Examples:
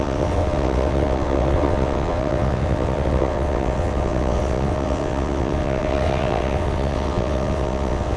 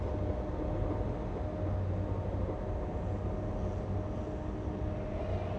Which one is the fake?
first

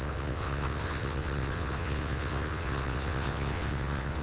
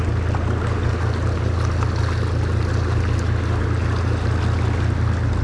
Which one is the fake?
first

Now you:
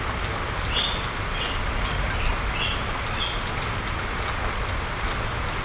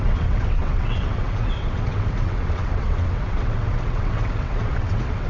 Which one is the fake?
second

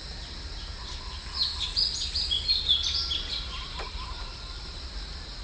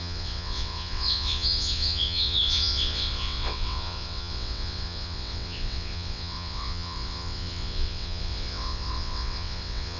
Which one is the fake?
second